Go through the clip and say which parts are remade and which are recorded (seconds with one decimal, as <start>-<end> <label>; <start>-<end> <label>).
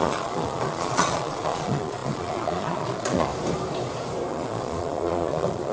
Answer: 0.0-3.3 remade; 3.3-4.3 recorded; 4.3-5.7 remade